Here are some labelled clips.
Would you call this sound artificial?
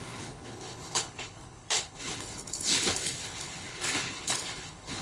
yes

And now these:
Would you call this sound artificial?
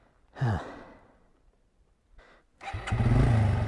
no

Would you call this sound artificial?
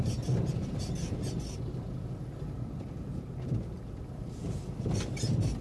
no